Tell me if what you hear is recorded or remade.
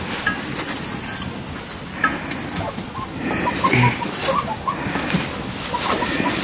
recorded